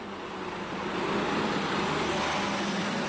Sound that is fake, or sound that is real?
real